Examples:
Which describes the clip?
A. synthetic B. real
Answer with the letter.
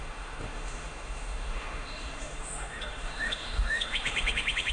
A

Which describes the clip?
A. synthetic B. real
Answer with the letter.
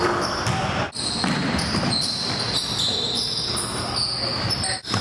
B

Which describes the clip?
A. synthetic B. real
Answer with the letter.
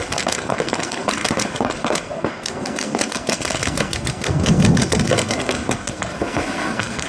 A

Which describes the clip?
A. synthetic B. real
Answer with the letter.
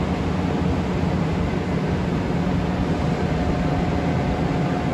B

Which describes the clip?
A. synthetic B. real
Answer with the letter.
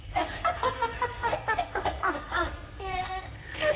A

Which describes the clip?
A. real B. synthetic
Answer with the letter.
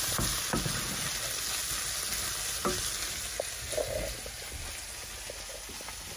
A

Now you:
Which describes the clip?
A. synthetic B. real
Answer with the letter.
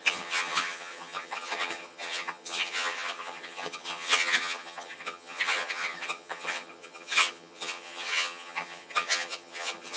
A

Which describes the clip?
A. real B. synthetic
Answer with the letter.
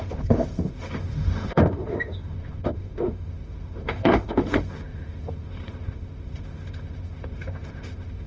B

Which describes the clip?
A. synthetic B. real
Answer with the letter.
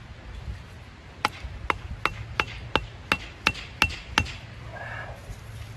B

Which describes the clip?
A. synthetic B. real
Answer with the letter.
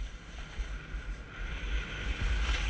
B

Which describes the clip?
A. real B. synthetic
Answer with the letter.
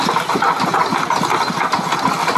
A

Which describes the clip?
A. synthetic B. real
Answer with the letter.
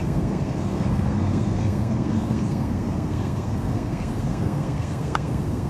A